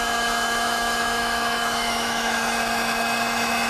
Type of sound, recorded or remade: remade